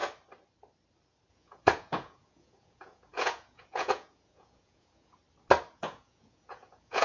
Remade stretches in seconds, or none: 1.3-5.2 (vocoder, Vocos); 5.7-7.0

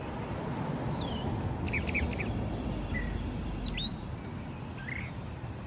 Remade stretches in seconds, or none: none

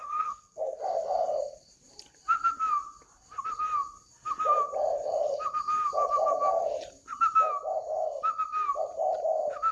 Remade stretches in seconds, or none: 0.0-0.8 (codec, SNAC)